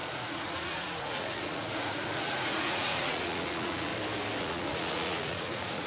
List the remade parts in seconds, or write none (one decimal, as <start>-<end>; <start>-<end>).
0.0-3.9; 4.4-5.9